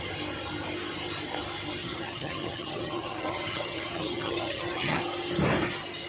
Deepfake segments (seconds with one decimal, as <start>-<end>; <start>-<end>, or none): 1.8-5.0